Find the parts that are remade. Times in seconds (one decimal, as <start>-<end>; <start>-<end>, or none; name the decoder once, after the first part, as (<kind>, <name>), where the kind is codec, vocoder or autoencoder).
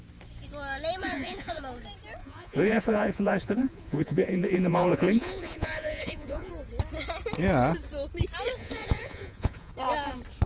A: 1.0-1.6 (vocoder, Vocos); 2.2-6.5; 8.6-9.7